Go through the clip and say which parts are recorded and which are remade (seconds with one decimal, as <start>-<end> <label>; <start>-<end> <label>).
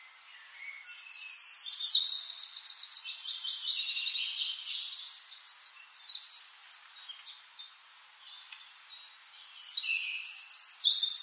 0.0-11.2 recorded